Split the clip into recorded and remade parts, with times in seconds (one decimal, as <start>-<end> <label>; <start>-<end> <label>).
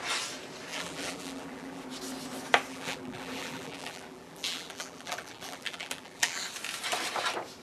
0.0-0.7 recorded; 0.7-1.8 remade; 1.8-2.7 recorded; 2.7-6.4 remade; 6.4-7.6 recorded